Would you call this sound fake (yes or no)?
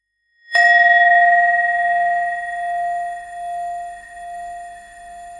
yes